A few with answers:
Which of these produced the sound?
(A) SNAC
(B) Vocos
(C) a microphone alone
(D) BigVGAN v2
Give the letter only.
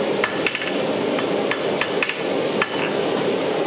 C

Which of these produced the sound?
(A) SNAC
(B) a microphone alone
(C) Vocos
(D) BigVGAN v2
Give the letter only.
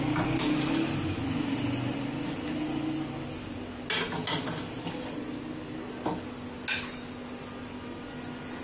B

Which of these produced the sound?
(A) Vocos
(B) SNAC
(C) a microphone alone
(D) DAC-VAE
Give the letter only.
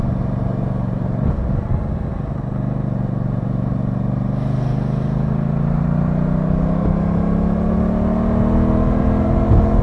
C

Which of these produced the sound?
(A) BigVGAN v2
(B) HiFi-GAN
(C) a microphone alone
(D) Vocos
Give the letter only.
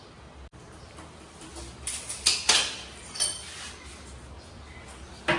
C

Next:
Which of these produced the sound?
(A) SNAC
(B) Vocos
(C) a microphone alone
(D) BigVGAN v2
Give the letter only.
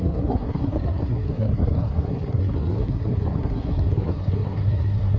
A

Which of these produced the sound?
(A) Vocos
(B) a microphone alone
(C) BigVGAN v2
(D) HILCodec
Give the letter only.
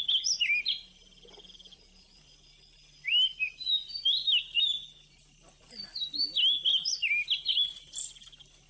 B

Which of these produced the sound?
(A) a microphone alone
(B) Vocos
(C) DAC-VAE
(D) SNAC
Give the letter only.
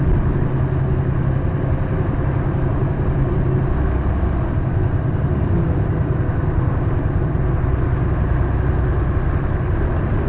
A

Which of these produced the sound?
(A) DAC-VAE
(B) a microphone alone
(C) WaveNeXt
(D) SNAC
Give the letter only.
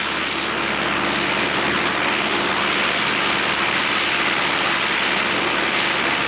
B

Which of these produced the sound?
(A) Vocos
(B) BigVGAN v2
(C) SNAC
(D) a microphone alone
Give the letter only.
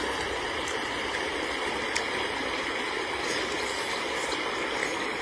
D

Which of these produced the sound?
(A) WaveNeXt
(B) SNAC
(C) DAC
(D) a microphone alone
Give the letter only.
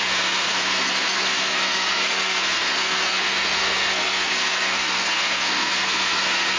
B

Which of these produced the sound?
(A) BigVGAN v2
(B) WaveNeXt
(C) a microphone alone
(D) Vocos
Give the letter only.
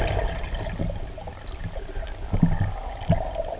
C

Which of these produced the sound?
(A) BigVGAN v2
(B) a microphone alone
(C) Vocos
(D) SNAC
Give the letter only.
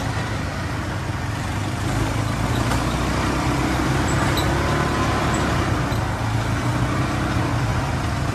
B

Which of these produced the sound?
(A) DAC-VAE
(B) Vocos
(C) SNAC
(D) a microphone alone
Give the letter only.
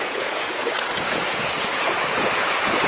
B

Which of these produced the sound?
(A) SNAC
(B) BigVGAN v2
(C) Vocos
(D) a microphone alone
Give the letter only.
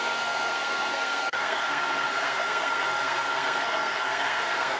A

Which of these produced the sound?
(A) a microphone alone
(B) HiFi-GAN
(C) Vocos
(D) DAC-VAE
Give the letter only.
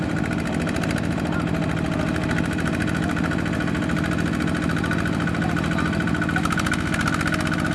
A